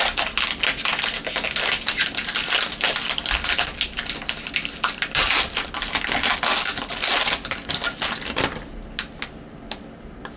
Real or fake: real